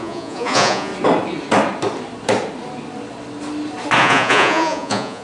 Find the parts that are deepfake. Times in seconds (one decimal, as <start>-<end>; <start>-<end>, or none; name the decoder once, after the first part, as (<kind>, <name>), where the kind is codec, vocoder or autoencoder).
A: 0.0-0.9 (vocoder, Vocos); 4.0-5.2

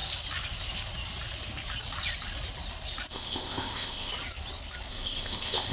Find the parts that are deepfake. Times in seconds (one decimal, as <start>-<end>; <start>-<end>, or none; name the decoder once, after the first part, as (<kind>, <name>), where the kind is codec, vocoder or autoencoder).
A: 3.1-4.1 (codec, ZipCodec); 4.9-5.7

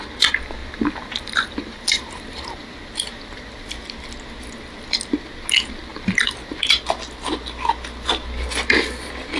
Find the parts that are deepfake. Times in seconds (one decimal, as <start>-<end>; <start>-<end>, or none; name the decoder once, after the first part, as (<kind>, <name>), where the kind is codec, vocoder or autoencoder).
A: 0.6-3.7 (vocoder, BigVGAN v2); 5.9-6.7